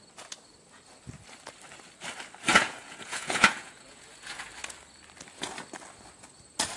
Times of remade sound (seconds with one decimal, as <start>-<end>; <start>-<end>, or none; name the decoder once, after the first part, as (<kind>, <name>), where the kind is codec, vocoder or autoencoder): 2.5-4.5 (vocoder, Vocos)